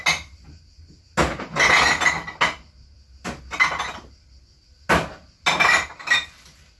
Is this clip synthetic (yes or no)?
no